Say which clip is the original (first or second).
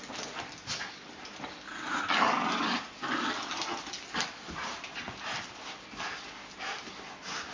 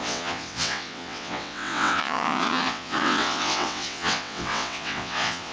first